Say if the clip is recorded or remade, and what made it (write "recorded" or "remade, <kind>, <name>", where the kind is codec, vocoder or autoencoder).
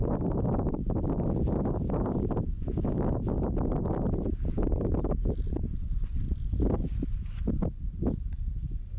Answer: remade, vocoder, BigVGAN v2